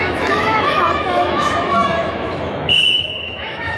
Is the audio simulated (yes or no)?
yes